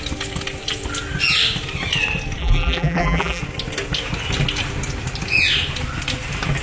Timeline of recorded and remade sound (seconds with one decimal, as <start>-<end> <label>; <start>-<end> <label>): 0.0-2.4 recorded; 2.4-3.4 remade; 3.4-6.6 recorded